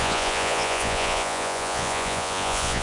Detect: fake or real fake